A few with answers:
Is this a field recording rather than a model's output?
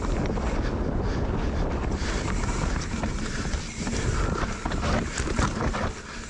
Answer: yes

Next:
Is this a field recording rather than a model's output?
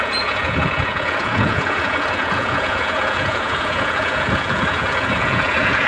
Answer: no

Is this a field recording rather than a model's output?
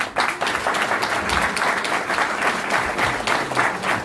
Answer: yes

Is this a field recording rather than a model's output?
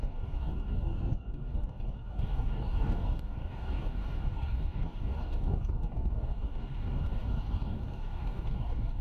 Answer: no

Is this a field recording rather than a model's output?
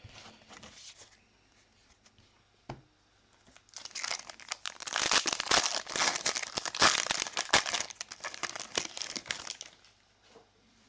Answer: yes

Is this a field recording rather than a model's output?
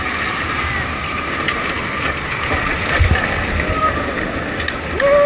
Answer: yes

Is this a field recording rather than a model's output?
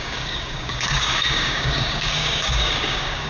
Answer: no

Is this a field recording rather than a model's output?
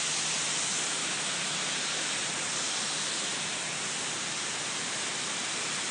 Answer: yes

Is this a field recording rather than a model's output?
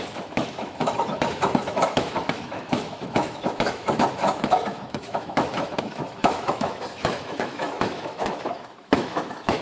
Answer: no